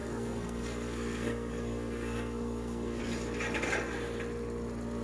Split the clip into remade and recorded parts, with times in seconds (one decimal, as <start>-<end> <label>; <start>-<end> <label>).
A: 0.0-3.0 remade; 3.0-5.0 recorded